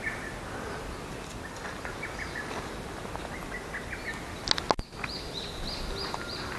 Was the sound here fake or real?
real